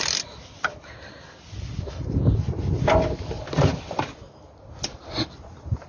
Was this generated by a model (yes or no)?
no